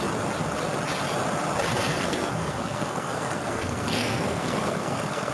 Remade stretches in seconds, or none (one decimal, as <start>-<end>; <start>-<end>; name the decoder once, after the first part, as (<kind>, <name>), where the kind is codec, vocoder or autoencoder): 1.7-5.3 (codec, SNAC)

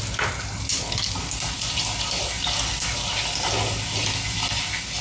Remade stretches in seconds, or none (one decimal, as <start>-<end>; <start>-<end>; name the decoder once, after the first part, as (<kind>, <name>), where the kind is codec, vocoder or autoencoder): 0.7-1.3 (codec, DAC)

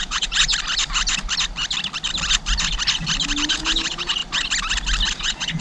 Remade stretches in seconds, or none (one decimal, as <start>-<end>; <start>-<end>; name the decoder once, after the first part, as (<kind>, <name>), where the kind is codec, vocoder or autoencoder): 0.0-0.5 (vocoder, Vocos); 3.5-4.2; 5.1-5.6

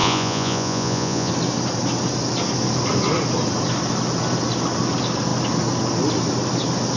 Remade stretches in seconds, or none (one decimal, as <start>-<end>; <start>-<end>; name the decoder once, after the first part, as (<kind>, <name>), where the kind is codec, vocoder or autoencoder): 0.0-1.3 (vocoder, Vocos)

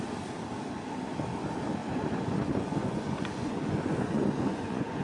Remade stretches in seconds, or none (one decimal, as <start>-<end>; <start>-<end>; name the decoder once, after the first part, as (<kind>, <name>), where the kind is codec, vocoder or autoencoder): 1.8-5.0 (vocoder, Vocos)

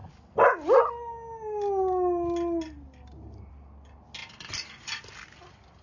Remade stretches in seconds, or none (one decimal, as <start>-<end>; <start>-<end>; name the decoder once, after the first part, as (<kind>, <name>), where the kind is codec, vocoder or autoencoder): none

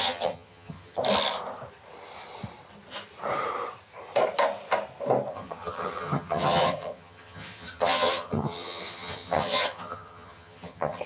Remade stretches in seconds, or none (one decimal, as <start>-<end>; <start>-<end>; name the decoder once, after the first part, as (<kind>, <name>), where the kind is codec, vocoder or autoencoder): 0.0-1.0 (vocoder, HiFi-GAN); 5.3-11.1

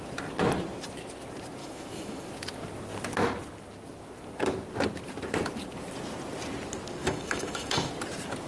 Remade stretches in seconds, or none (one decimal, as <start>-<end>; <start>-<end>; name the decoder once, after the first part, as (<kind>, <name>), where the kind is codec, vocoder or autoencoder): 1.6-2.3 (autoencoder, DAC-VAE); 7.0-7.9